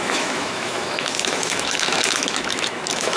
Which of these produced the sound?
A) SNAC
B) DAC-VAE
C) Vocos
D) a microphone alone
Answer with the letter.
B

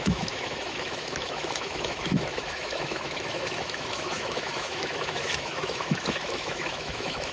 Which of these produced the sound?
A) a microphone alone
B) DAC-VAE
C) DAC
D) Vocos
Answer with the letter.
B